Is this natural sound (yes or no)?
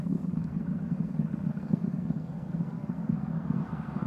no